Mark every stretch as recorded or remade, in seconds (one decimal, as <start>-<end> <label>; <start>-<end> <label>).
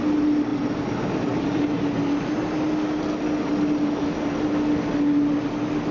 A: 0.0-5.9 recorded